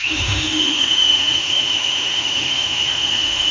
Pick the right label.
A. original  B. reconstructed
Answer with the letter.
B